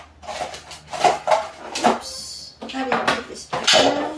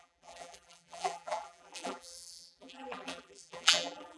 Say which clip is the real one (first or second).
first